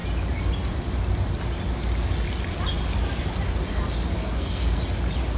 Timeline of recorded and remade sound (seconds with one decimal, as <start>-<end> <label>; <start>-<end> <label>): 0.0-4.2 recorded; 4.2-4.8 remade; 4.8-5.4 recorded

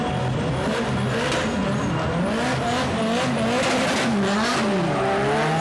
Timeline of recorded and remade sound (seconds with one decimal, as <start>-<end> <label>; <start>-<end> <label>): 0.0-5.6 recorded

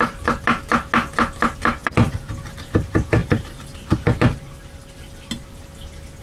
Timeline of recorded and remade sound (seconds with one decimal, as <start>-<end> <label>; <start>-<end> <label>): 0.0-1.8 recorded; 1.8-2.3 remade; 2.3-3.2 recorded; 3.2-5.6 remade; 5.6-6.2 recorded

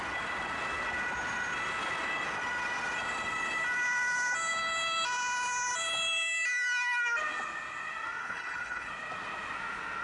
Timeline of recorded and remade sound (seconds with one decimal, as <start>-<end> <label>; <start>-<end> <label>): 0.0-8.2 recorded; 8.2-8.9 remade; 8.9-10.0 recorded

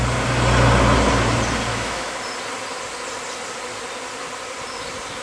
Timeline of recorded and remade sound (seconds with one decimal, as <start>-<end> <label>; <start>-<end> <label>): 0.0-1.7 recorded; 1.7-2.2 remade; 2.2-5.2 recorded

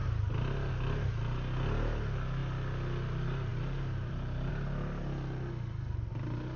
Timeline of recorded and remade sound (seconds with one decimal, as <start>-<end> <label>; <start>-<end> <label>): 0.0-3.5 recorded; 3.5-4.5 remade; 4.5-6.6 recorded

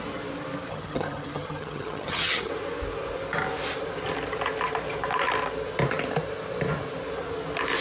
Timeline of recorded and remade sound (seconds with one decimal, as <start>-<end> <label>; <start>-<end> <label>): 0.0-0.7 recorded; 0.7-2.5 remade; 2.5-7.8 recorded

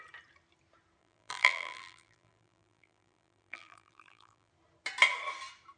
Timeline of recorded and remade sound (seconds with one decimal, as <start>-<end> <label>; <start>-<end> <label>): 0.0-1.0 recorded; 1.0-4.5 remade; 4.5-5.8 recorded